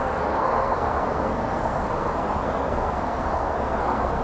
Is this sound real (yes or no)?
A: no